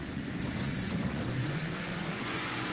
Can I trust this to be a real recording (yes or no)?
no